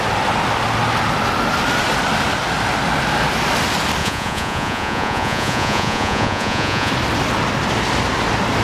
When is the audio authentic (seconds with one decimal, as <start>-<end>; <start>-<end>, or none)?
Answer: 0.0-4.0; 6.9-8.6